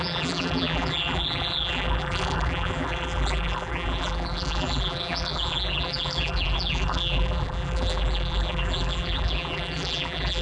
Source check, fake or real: fake